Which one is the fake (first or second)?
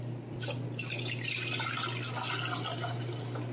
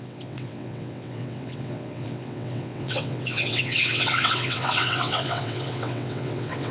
second